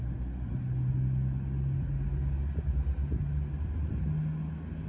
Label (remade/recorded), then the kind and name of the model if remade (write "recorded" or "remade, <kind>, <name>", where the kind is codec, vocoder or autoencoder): recorded